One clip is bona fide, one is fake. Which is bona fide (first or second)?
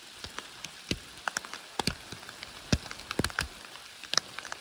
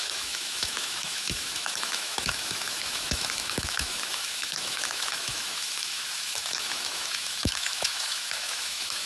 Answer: first